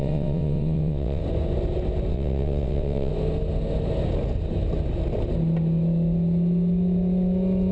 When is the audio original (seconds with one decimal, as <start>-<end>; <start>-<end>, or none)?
1.2-2.1; 3.1-7.7